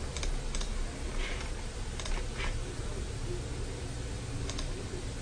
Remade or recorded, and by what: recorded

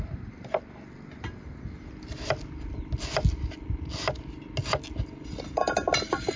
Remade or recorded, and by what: recorded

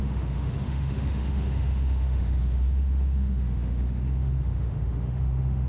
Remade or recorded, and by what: remade, autoencoder, DAC-VAE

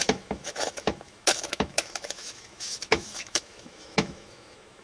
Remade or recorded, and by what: remade, autoencoder, DAC-VAE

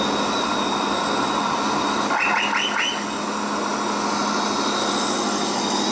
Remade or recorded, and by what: recorded